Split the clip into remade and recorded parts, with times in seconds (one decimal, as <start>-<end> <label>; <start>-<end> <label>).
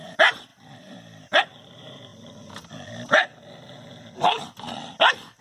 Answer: 0.0-2.1 remade; 2.1-5.4 recorded